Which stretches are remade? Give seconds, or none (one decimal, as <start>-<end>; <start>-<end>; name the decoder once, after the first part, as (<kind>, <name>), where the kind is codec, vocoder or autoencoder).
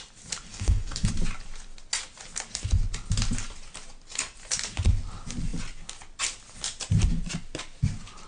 0.5-1.1 (codec, DAC)